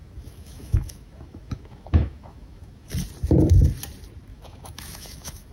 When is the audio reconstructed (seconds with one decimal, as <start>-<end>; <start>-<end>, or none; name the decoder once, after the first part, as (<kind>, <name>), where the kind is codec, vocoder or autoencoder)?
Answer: 0.0-2.9 (autoencoder, DAC-VAE); 4.3-5.5